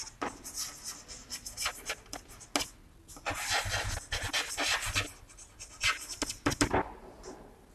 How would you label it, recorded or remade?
recorded